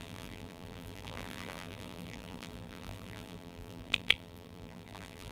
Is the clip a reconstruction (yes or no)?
yes